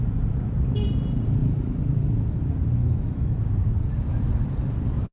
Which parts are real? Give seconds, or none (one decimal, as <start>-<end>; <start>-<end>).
0.0-2.8; 3.4-5.1